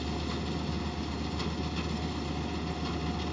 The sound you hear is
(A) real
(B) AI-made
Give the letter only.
A